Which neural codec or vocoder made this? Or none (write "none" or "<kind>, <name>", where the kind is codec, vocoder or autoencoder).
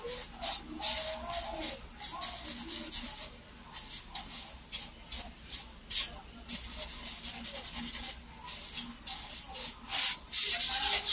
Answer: none